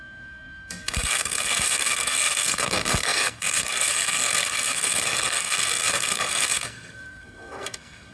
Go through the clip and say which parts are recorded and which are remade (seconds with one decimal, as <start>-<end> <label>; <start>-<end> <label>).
0.0-8.1 remade